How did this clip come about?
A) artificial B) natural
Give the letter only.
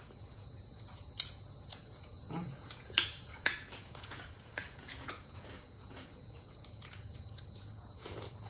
A